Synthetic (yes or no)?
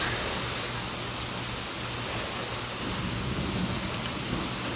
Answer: no